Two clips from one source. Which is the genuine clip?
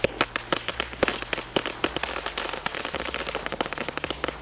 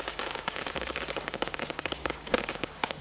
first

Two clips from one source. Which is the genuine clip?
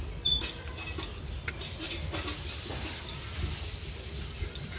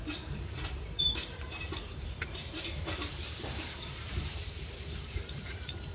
first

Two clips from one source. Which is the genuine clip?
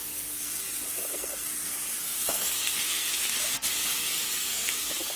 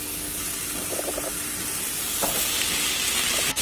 second